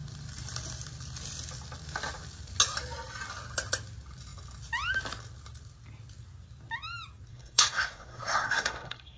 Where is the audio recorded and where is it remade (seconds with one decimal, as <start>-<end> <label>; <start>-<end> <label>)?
0.0-7.3 recorded; 7.3-9.2 remade